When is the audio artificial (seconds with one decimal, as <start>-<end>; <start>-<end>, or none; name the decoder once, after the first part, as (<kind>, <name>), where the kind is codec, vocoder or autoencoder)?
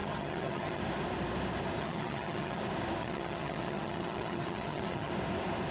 0.0-0.8 (vocoder, HiFi-GAN); 1.8-2.6; 3.0-5.1